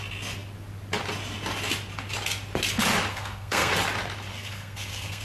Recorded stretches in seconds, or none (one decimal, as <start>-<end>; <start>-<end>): 0.0-3.1; 3.7-4.3